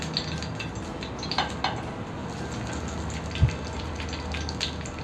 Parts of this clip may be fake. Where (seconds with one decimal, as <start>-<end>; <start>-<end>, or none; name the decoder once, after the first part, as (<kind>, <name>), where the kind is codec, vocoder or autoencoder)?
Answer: none